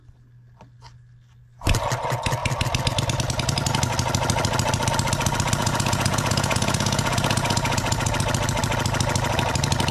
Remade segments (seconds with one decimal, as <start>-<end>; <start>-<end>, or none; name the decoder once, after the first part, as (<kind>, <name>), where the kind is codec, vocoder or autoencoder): 5.6-8.1 (vocoder, Vocos)